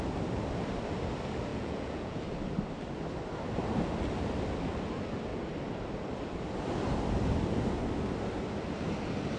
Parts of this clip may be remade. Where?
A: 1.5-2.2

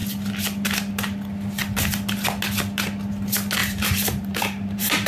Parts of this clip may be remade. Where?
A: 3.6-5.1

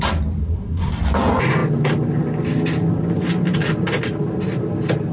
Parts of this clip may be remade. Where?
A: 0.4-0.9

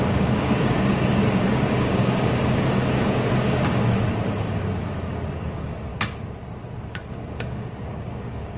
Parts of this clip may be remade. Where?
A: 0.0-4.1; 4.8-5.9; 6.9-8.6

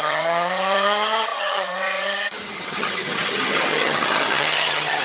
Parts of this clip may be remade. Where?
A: 0.0-5.0

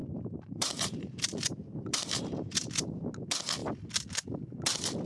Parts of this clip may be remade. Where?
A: 0.0-3.1

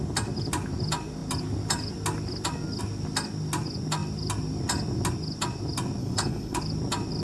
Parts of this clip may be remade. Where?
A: 6.0-6.6